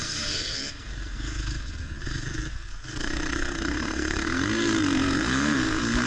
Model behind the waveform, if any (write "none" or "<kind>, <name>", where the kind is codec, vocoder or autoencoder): codec, SNAC